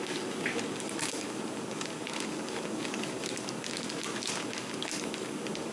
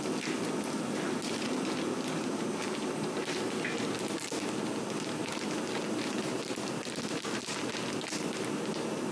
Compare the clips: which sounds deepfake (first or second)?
first